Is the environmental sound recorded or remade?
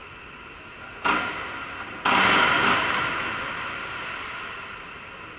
recorded